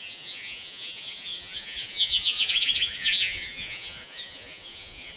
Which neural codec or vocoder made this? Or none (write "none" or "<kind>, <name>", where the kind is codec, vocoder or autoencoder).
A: vocoder, Vocos